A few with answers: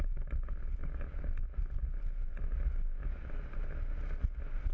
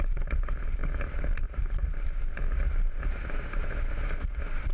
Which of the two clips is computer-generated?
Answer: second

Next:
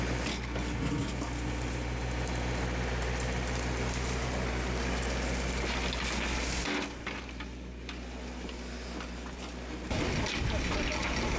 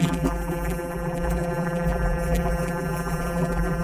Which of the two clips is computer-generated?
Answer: second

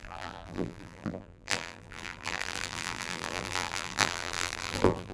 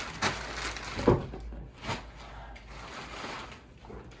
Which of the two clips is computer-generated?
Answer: first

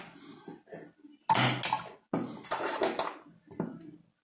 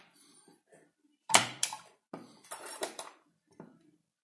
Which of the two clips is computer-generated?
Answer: second